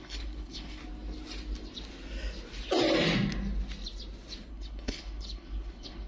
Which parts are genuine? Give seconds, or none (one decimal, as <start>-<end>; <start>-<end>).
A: 0.8-4.5